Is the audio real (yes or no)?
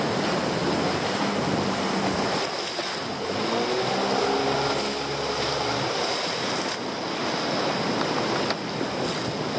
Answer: yes